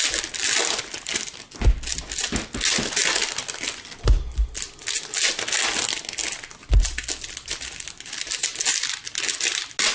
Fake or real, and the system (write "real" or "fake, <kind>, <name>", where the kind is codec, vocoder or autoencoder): real